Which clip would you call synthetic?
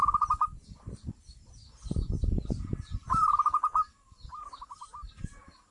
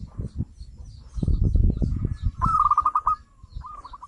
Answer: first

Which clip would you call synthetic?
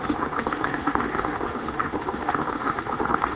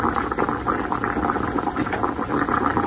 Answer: first